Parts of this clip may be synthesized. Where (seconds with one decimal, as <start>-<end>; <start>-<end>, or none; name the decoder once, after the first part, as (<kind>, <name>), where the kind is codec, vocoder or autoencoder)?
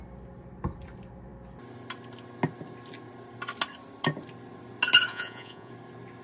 5.1-5.7 (vocoder, Vocos)